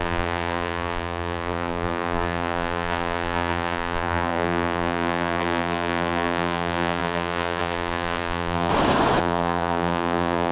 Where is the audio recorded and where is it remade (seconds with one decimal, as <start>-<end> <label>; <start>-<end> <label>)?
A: 0.0-8.7 remade; 8.7-9.2 recorded; 9.2-10.5 remade